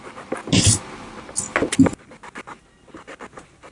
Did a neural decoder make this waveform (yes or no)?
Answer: no